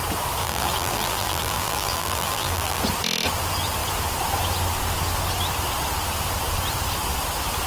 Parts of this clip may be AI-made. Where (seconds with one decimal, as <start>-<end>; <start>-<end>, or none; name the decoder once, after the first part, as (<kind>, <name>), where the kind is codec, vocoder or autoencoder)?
0.4-2.8 (vocoder, BigVGAN v2)